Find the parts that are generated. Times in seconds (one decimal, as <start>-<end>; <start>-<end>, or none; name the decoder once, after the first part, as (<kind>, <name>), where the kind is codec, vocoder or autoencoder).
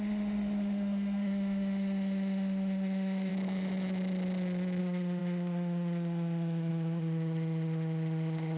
0.0-3.3 (autoencoder, DAC-VAE); 4.8-8.6